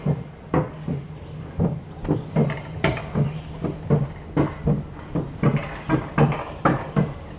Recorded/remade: recorded